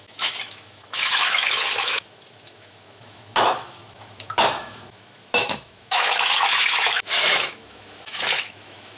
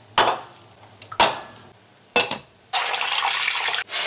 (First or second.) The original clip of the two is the second